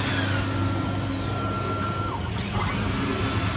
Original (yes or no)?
yes